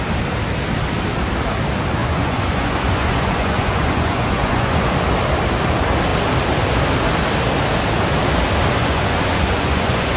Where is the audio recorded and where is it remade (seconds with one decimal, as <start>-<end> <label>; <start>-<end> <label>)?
0.0-2.0 recorded; 2.0-4.9 remade; 4.9-8.8 recorded; 8.8-10.2 remade